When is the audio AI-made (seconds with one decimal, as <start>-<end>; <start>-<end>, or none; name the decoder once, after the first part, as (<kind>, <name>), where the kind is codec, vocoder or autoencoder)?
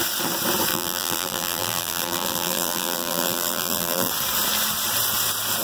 0.7-4.1 (vocoder, BigVGAN v2)